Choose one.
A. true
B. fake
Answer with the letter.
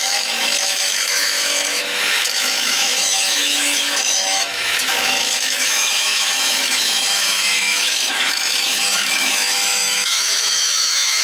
B